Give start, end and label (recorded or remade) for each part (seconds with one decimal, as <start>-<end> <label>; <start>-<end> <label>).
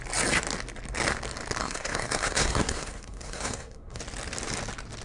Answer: 0.0-1.6 recorded; 1.6-4.0 remade; 4.0-5.0 recorded